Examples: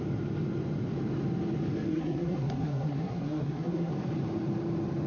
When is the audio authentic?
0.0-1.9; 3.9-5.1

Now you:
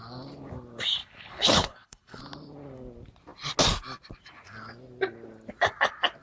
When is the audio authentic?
0.0-1.0; 2.2-6.2